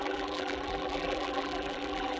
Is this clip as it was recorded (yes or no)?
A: no